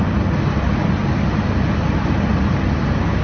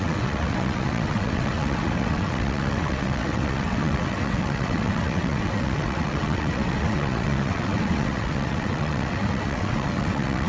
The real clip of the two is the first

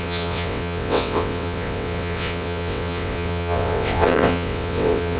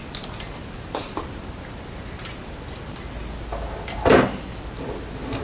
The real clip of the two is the second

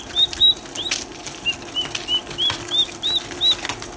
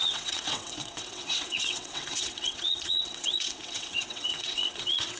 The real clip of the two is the first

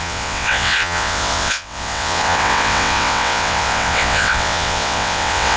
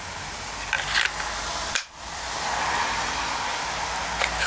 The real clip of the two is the second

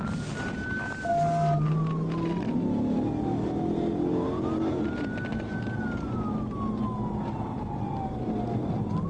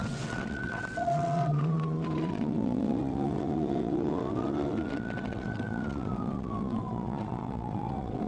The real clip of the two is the first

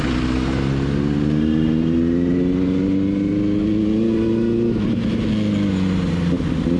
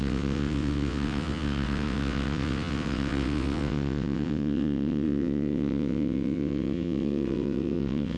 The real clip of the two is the first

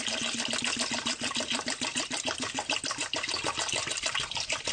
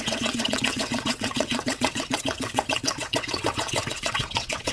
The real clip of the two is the first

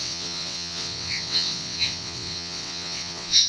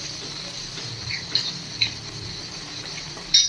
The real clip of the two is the second